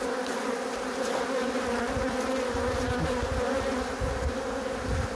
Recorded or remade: recorded